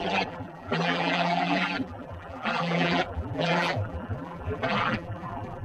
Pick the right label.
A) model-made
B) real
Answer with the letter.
A